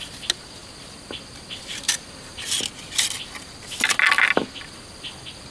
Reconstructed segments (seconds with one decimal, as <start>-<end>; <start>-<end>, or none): none